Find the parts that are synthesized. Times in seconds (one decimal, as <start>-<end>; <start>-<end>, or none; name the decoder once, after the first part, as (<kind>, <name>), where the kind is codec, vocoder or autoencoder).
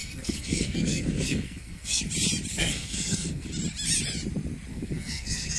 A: 0.0-2.0 (codec, SNAC); 2.5-3.5; 4.7-5.6